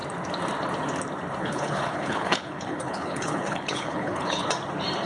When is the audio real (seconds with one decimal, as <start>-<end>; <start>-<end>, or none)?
0.0-1.4; 4.5-5.1